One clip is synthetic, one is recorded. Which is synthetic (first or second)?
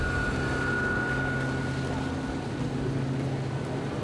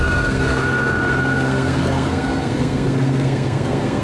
second